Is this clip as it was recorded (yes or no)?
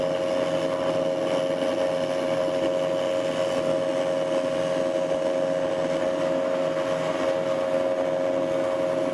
yes